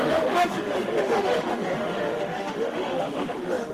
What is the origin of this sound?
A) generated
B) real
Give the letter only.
A